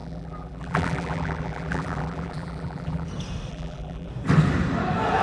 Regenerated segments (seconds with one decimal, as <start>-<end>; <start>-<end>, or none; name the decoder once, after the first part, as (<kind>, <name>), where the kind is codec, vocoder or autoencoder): 0.0-3.1 (vocoder, BigVGAN v2); 3.5-4.1